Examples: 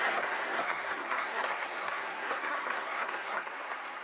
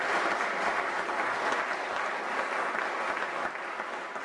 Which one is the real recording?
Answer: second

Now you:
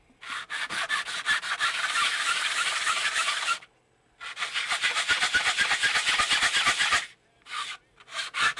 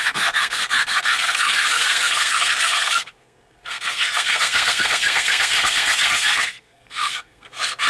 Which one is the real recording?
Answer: first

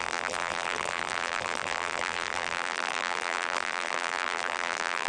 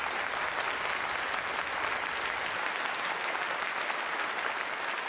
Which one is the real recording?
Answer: second